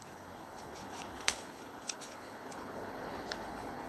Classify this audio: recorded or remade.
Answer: remade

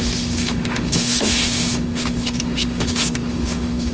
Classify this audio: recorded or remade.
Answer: remade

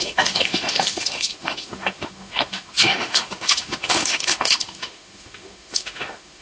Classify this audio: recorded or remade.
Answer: remade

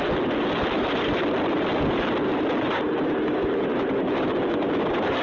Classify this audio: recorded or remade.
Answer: recorded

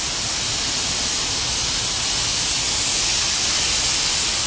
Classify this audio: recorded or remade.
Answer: recorded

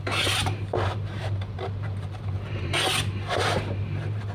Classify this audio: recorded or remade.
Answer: remade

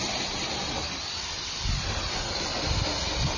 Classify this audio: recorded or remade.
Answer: recorded